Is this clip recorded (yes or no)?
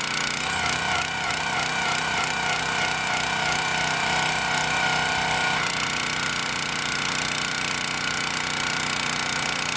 yes